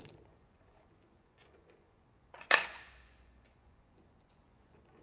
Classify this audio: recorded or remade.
remade